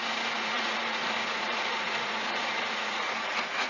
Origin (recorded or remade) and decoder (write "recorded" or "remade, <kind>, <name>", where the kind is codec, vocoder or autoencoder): remade, vocoder, Vocos